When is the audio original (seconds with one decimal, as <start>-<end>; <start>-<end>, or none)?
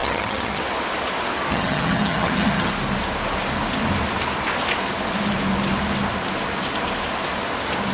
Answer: 0.6-1.5; 2.7-7.9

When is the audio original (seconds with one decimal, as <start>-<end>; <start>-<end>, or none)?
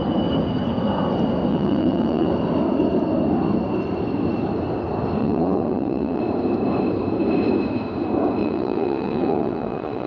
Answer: 0.0-1.5; 2.3-5.2; 6.2-8.4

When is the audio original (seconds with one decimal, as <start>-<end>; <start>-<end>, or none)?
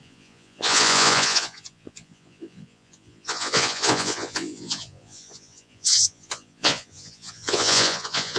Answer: none